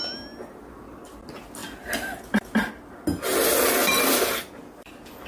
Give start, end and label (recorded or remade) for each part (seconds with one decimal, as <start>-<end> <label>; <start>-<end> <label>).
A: 0.0-1.6 recorded; 1.6-2.7 remade; 2.7-3.8 recorded; 3.8-4.4 remade; 4.4-5.3 recorded